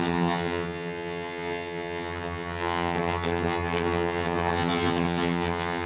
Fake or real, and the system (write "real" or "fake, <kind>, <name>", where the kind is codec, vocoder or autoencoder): fake, vocoder, HiFi-GAN